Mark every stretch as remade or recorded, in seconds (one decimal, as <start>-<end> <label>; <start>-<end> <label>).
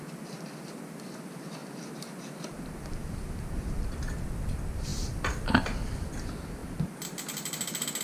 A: 0.0-1.6 remade; 1.6-3.7 recorded; 3.7-6.6 remade; 6.6-8.0 recorded